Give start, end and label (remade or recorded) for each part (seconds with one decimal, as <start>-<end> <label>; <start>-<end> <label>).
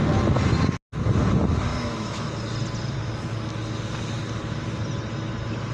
0.0-1.7 recorded; 1.7-2.3 remade; 2.3-5.7 recorded